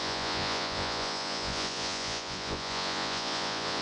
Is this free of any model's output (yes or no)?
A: no